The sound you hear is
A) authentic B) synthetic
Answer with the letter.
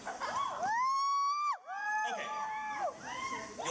A